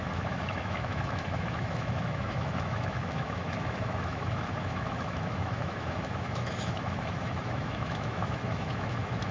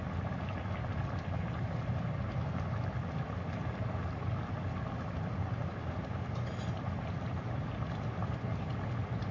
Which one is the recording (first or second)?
second